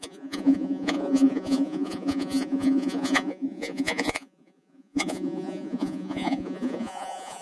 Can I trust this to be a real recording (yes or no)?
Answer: no